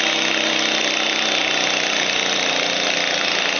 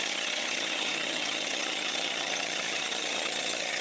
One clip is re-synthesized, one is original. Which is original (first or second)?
first